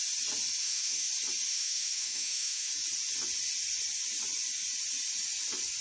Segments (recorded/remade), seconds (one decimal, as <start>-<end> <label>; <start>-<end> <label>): 0.0-0.6 recorded; 0.6-1.1 remade; 1.1-1.5 recorded; 1.5-2.7 remade; 2.7-5.8 recorded